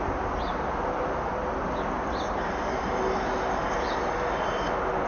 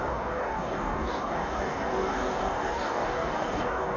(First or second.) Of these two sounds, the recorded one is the first